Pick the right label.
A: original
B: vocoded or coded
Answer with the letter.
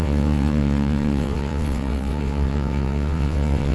B